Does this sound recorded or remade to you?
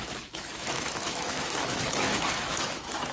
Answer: remade